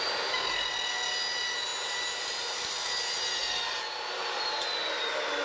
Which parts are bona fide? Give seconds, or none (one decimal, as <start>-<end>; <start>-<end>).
0.0-5.4